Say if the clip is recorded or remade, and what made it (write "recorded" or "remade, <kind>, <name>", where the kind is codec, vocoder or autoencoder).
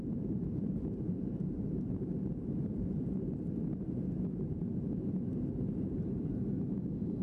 remade, vocoder, BigVGAN v2